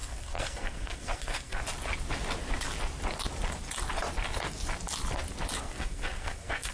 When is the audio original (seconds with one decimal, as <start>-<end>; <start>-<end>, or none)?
1.6-5.6